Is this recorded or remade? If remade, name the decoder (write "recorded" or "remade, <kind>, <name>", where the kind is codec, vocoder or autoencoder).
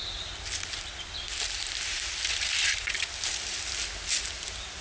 recorded